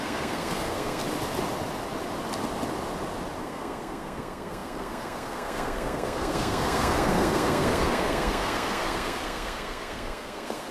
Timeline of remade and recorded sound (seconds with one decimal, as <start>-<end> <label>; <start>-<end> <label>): 0.0-1.0 remade; 1.0-3.4 recorded; 3.4-10.7 remade